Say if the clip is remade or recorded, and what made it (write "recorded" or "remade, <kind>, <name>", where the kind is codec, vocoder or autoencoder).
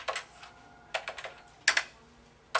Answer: recorded